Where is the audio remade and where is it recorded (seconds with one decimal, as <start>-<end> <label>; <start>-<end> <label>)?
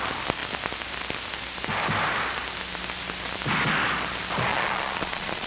0.0-4.5 recorded; 4.5-5.5 remade